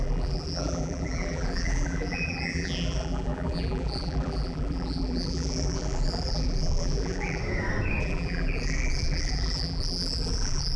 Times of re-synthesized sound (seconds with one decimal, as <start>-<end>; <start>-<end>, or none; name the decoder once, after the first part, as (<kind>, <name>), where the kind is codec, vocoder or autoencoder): 0.0-7.4 (vocoder, BigVGAN v2); 8.0-10.8